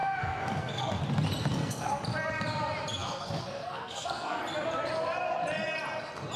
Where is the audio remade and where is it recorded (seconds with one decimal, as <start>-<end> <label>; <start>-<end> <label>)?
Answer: 0.0-1.0 remade; 1.0-1.5 recorded; 1.5-2.0 remade; 2.0-3.0 recorded; 3.0-4.4 remade; 4.4-6.4 recorded